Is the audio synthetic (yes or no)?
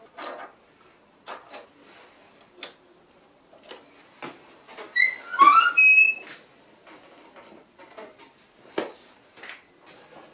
no